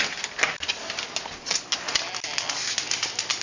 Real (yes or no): yes